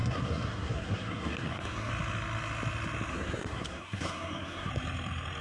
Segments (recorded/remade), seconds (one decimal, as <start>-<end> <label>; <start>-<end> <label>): 0.0-1.9 remade; 1.9-3.1 recorded; 3.1-4.7 remade; 4.7-5.4 recorded